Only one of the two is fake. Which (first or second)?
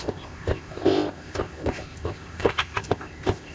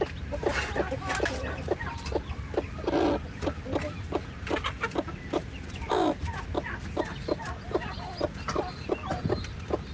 first